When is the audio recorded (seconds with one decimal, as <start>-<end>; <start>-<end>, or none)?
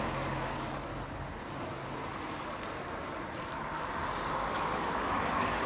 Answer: 0.9-4.3